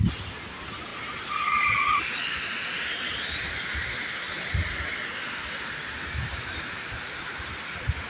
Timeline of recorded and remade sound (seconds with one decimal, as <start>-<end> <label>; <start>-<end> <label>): 0.0-8.1 recorded